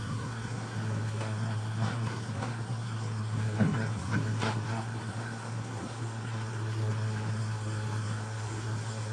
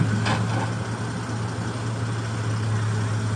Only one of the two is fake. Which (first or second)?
first